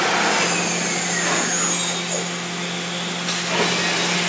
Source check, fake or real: real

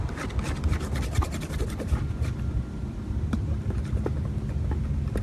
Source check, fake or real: real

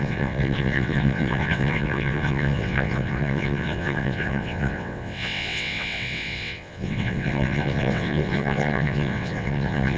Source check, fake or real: fake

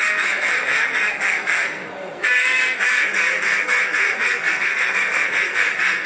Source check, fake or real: fake